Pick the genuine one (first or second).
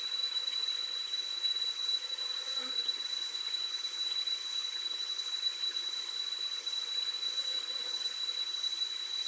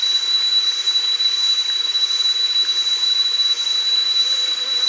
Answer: second